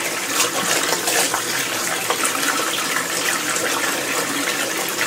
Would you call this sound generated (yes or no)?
no